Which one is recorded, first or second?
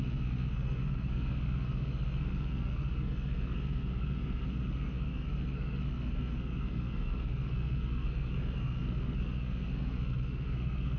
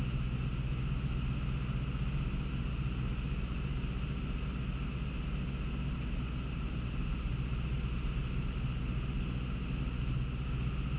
second